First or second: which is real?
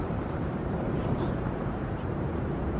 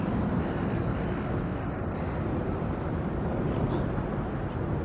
second